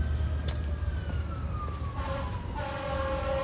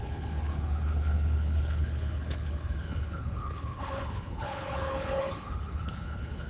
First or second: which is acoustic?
first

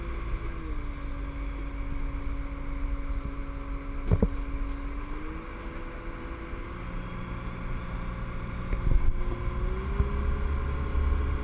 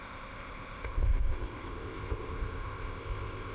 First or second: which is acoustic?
first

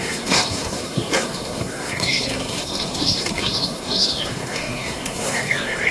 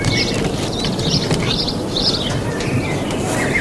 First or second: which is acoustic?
second